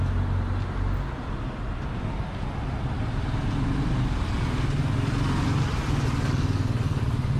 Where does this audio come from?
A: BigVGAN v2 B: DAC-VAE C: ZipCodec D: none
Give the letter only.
D